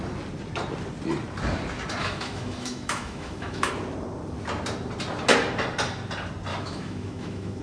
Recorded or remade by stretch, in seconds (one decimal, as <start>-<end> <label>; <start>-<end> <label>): 0.0-2.0 recorded; 2.0-3.7 remade; 3.7-6.5 recorded; 6.5-7.6 remade